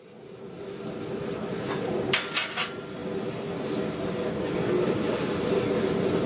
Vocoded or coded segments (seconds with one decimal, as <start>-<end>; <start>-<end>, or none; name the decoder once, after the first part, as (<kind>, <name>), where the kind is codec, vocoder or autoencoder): none